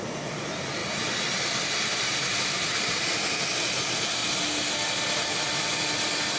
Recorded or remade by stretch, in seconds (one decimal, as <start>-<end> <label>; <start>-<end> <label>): 0.0-0.8 remade; 0.8-2.4 recorded; 2.4-4.2 remade; 4.2-5.4 recorded; 5.4-6.4 remade